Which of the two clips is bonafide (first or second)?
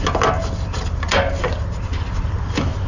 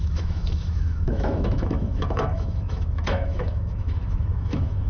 first